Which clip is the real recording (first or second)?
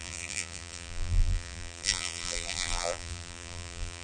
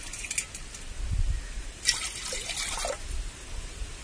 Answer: second